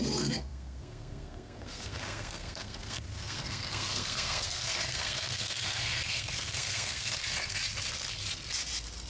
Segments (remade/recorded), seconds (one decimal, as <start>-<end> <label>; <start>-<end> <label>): 0.0-7.6 remade; 7.6-9.1 recorded